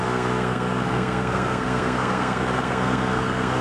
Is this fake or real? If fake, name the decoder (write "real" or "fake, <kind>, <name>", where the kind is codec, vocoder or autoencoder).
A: fake, codec, SNAC